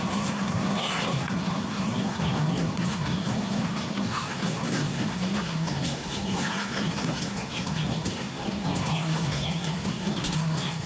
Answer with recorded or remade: remade